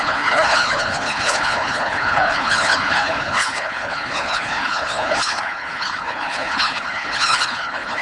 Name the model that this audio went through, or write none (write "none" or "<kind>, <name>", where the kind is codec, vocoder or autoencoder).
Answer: codec, HILCodec